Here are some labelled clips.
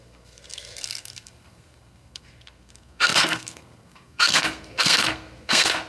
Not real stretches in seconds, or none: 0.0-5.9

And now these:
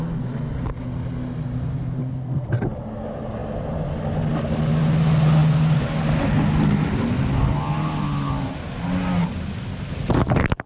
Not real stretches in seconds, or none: 2.0-2.5

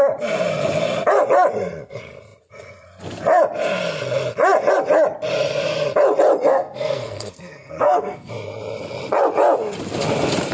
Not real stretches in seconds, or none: 6.5-8.3